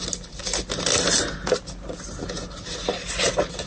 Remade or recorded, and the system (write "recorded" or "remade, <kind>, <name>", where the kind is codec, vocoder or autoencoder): recorded